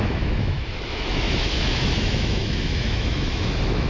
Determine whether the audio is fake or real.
fake